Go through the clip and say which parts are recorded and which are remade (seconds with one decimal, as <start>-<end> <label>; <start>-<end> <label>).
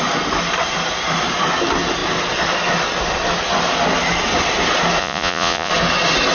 0.0-5.0 recorded; 5.0-5.7 remade; 5.7-6.3 recorded